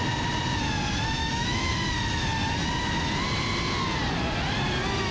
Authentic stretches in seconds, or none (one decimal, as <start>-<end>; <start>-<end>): 0.0-1.2; 1.7-5.1